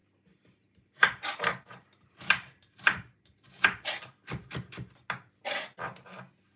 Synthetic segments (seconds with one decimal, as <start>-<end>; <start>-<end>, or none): 0.0-4.0